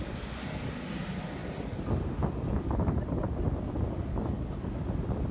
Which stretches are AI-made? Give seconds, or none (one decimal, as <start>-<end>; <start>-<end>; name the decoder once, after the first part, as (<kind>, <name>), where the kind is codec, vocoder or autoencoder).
4.1-4.7 (codec, HILCodec)